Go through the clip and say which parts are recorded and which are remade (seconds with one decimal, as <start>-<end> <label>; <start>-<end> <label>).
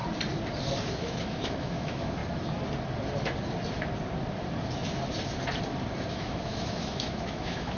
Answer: 0.0-0.9 recorded; 0.9-2.2 remade; 2.2-6.1 recorded; 6.1-7.8 remade